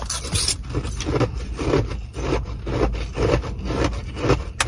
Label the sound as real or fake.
real